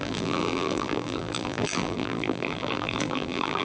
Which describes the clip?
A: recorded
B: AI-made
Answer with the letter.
B